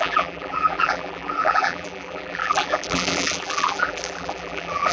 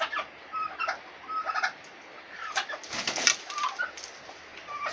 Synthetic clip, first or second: first